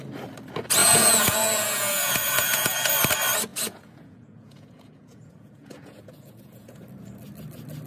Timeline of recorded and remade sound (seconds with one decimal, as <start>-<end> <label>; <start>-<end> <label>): 0.0-0.8 recorded; 0.8-2.9 remade; 2.9-3.5 recorded; 3.5-6.8 remade; 6.8-7.9 recorded